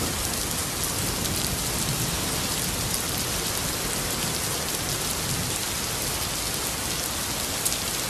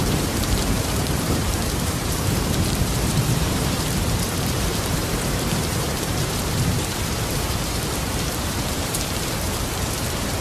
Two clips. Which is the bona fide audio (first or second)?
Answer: first